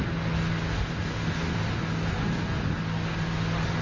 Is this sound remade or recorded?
recorded